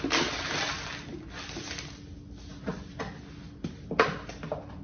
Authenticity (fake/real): real